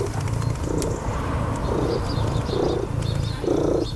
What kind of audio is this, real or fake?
real